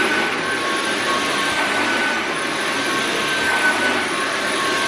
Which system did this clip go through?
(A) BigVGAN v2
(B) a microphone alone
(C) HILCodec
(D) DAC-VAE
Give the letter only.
A